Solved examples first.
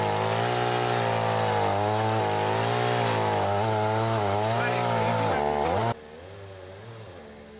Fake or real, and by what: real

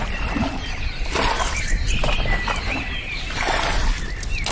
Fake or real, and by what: real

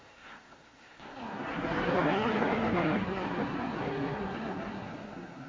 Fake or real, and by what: fake, codec, SNAC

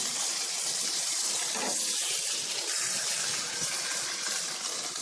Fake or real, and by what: real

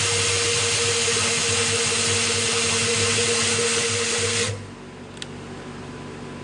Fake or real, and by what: real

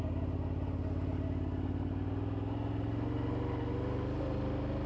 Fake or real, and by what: real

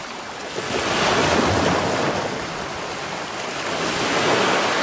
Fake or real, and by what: real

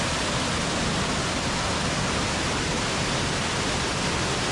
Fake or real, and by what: real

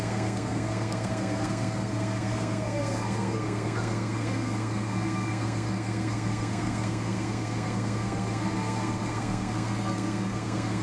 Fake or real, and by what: fake, codec, SNAC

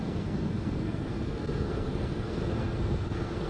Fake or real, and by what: fake, codec, SNAC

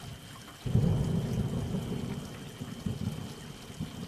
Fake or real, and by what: real